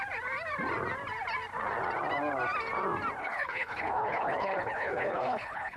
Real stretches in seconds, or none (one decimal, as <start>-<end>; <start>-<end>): 0.0-3.2